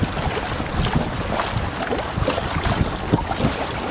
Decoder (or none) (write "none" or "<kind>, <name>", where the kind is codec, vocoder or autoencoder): none